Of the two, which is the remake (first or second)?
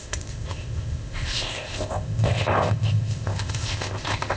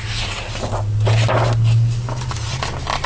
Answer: first